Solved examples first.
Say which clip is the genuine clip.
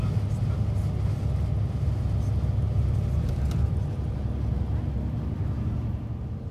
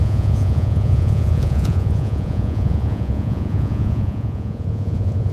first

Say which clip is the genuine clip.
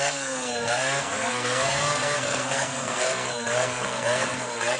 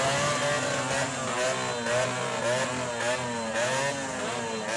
second